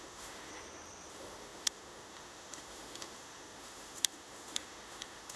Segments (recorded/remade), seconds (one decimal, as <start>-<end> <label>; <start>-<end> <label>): 0.0-0.5 remade; 0.5-1.1 recorded; 1.1-5.4 remade